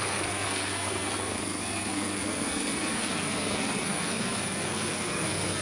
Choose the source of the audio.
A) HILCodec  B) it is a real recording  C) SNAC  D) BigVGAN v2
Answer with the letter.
C